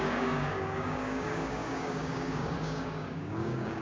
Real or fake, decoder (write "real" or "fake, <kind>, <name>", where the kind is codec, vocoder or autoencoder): fake, codec, DAC